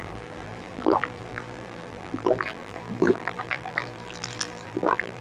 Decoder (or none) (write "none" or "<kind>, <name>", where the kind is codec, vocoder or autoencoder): vocoder, BigVGAN v2